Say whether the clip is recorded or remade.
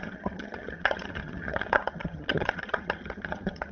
remade